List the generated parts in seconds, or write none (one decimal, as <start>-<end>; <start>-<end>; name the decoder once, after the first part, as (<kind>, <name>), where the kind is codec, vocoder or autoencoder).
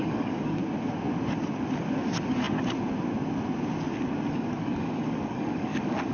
0.0-0.6 (codec, DAC); 4.3-6.1